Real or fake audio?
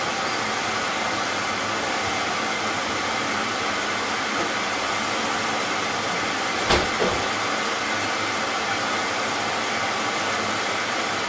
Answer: real